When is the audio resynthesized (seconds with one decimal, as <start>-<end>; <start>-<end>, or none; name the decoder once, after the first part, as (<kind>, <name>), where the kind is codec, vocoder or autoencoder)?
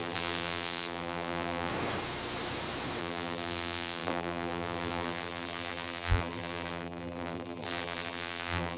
0.0-1.7 (vocoder, BigVGAN v2); 3.0-8.8